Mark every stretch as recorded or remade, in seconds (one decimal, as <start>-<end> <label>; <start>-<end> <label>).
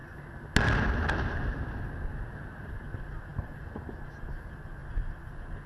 0.0-5.7 recorded